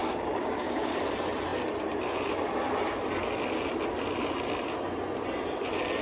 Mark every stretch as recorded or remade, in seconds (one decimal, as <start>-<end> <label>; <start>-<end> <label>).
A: 0.0-1.0 remade; 1.0-6.0 recorded